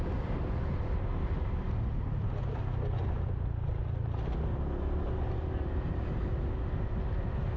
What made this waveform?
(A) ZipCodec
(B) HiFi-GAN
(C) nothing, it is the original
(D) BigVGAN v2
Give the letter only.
C